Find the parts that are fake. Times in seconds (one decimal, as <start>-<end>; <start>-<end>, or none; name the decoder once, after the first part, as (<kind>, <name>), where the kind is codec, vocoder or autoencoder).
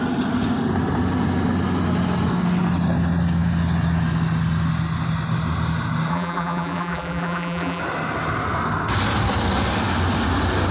6.1-7.8 (vocoder, BigVGAN v2)